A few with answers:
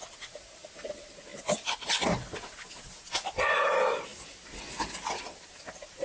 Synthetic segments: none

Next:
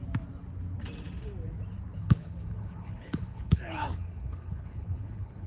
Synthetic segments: 2.0-5.5 (codec, HILCodec)